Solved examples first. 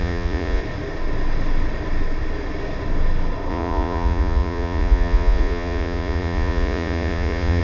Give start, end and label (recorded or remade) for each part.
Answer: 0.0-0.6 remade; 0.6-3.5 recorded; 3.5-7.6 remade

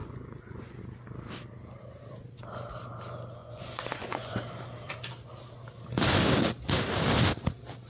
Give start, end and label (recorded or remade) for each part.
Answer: 0.0-0.8 remade; 0.8-3.4 recorded; 3.4-4.4 remade; 4.4-7.9 recorded

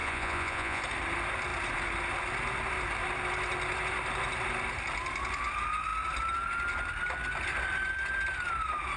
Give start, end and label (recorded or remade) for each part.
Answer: 0.0-0.8 remade; 0.8-9.0 recorded

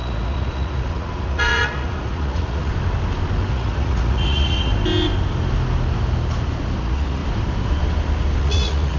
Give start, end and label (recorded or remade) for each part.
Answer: 0.0-2.7 remade; 2.7-3.5 recorded; 3.5-4.7 remade; 4.7-6.8 recorded; 6.8-7.2 remade; 7.2-8.4 recorded; 8.4-9.0 remade

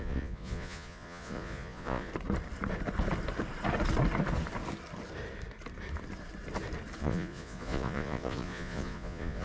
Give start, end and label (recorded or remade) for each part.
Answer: 0.0-2.1 remade; 2.1-7.0 recorded; 7.0-9.4 remade

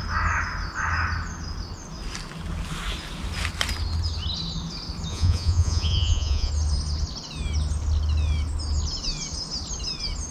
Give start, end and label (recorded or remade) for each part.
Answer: 0.0-5.1 recorded; 5.1-6.5 remade; 6.5-10.3 recorded

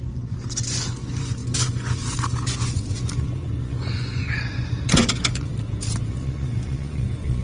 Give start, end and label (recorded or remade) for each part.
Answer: 0.0-5.5 remade; 5.5-6.1 recorded; 6.1-7.4 remade

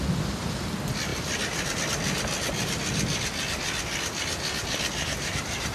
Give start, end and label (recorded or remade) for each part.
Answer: 0.0-5.7 recorded